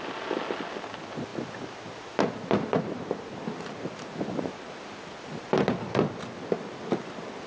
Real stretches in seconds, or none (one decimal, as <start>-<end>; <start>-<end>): 0.0-7.5